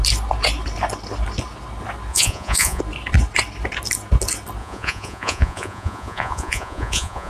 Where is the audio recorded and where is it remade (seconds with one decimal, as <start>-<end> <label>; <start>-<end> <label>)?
0.0-2.1 recorded; 2.1-2.8 remade; 2.8-4.6 recorded; 4.6-7.3 remade